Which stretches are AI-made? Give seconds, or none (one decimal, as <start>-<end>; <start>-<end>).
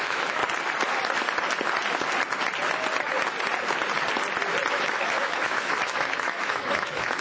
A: 0.0-0.4; 4.7-7.2